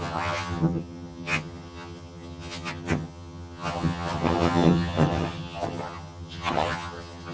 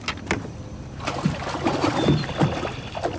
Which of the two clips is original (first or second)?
second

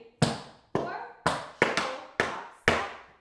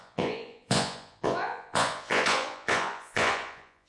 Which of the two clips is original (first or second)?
first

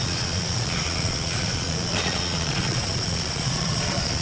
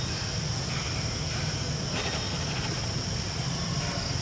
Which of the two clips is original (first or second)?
second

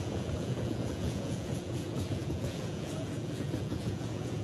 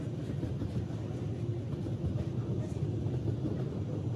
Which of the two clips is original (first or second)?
second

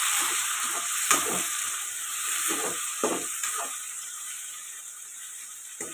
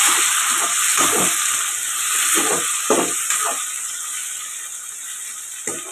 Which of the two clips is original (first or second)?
second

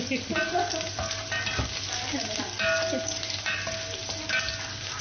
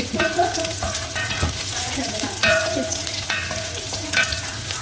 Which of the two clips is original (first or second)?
first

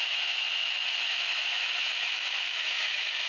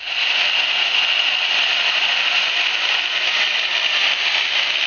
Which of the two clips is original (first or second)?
second